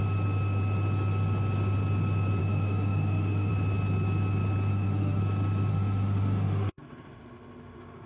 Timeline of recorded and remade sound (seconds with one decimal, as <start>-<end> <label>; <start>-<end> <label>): 0.0-2.4 recorded; 2.4-3.5 remade; 3.5-4.7 recorded; 4.7-5.2 remade; 5.2-5.7 recorded; 5.7-8.1 remade